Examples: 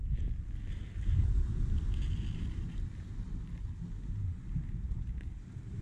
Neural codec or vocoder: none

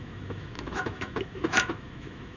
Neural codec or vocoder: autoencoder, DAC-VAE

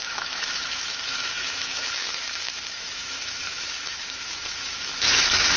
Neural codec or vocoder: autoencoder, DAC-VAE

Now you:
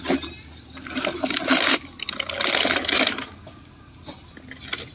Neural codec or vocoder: none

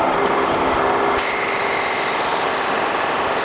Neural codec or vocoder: none